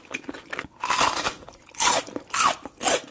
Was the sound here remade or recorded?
recorded